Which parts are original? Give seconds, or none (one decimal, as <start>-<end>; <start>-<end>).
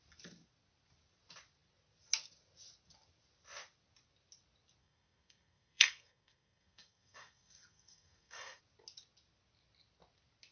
0.0-4.8; 8.6-10.5